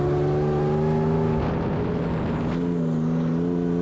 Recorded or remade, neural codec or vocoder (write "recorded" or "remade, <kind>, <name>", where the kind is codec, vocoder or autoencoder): recorded